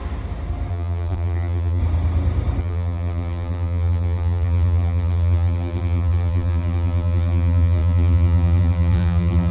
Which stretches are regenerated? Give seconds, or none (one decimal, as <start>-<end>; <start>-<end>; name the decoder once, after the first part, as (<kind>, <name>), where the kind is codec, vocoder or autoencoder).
0.7-1.8 (vocoder, BigVGAN v2); 2.6-9.5